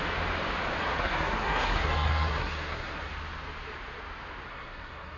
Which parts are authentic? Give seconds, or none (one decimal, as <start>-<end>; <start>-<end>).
0.0-0.8; 3.1-4.5